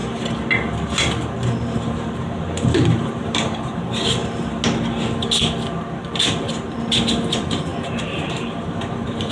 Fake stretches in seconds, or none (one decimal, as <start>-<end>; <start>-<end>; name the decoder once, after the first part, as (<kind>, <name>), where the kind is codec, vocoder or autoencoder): 1.4-4.2 (vocoder, BigVGAN v2); 7.3-9.3